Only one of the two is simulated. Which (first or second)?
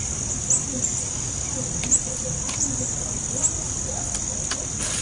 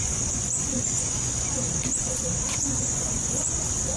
second